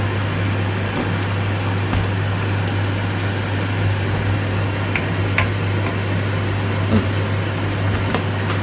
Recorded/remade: recorded